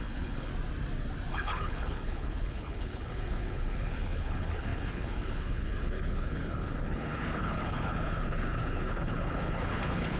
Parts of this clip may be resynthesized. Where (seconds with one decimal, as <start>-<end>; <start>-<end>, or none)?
0.0-0.5; 1.3-10.2